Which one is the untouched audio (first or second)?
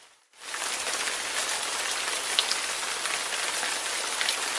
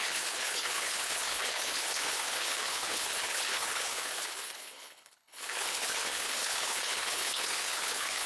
first